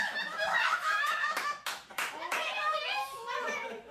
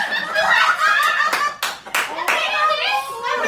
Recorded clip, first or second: second